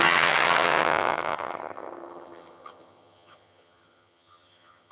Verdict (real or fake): fake